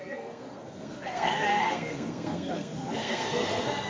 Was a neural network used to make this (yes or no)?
yes